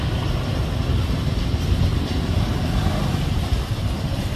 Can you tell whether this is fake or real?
real